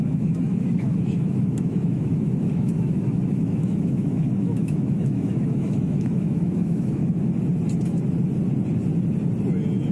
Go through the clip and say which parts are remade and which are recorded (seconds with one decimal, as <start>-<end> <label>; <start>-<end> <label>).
0.0-7.0 remade; 7.0-9.9 recorded